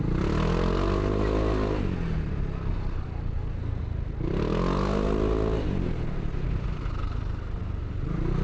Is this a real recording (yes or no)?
yes